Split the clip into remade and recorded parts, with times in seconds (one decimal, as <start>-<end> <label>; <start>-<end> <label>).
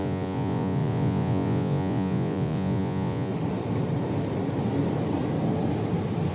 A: 0.0-3.3 remade; 3.3-6.3 recorded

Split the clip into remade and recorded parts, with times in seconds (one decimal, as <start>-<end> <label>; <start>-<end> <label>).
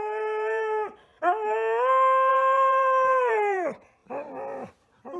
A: 0.0-1.1 remade; 1.1-2.3 recorded; 2.3-5.2 remade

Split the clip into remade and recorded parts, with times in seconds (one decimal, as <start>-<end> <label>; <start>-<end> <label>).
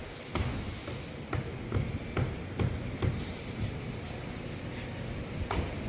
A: 0.0-5.9 recorded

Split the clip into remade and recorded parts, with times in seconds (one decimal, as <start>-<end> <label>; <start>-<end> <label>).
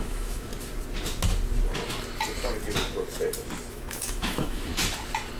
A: 0.0-0.5 remade; 0.5-3.7 recorded; 3.7-4.7 remade; 4.7-5.4 recorded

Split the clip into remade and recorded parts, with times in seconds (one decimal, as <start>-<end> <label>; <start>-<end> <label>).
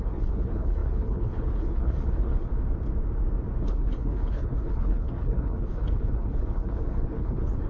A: 0.0-2.5 remade; 2.5-3.6 recorded; 3.6-7.7 remade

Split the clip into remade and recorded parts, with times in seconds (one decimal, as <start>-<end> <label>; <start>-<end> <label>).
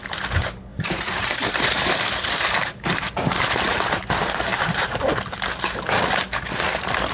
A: 0.0-0.7 recorded; 0.7-3.9 remade; 3.9-4.5 recorded; 4.5-5.2 remade; 5.2-7.1 recorded